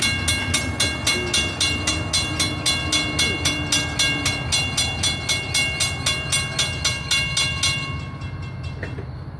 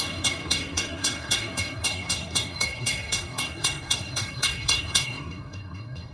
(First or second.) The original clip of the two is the first